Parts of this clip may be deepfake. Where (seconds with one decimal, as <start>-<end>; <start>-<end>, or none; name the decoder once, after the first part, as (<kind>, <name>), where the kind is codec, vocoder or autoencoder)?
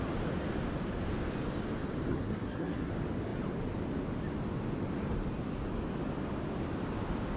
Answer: 2.1-2.9 (codec, SNAC)